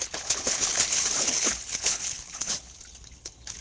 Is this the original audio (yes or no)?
no